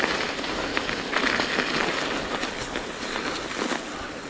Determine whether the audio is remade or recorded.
recorded